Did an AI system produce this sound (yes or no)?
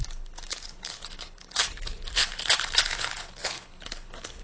yes